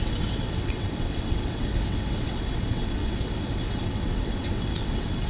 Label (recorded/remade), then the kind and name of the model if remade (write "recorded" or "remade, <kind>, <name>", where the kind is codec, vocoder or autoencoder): remade, vocoder, WaveNeXt